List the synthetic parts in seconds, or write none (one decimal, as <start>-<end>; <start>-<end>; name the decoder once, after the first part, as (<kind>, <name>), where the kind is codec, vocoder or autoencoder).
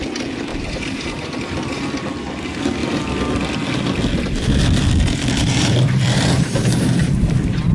0.5-1.8 (vocoder, BigVGAN v2); 5.4-7.1